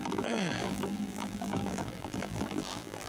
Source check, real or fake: fake